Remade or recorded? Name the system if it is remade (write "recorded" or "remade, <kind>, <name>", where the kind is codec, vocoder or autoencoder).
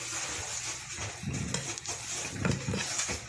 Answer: recorded